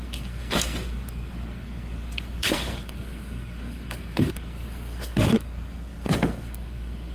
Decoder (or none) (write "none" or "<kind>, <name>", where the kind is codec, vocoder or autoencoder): codec, SNAC